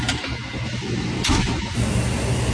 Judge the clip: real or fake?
real